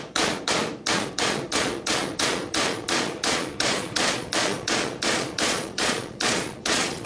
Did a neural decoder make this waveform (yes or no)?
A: yes